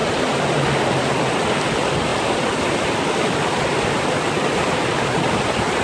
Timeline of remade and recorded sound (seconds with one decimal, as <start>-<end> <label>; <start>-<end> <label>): 0.0-5.8 recorded